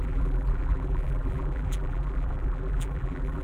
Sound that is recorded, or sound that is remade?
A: remade